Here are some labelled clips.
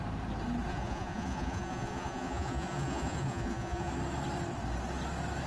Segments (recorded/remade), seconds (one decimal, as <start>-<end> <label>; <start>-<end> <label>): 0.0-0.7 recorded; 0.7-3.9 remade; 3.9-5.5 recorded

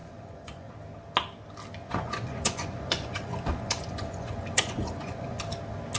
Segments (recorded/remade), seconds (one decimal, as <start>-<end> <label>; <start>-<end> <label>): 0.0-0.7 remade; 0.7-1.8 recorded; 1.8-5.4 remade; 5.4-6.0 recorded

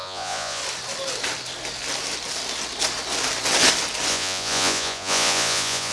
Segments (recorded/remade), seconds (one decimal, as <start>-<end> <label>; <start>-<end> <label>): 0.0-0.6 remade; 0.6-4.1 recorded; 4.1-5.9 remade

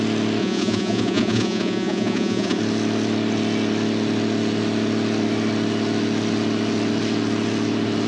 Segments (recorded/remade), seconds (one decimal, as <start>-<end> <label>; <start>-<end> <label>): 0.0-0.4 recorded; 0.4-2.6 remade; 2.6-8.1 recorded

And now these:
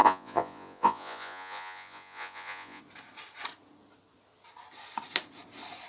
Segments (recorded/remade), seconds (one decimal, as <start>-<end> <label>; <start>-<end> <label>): 0.0-2.8 remade; 2.8-5.9 recorded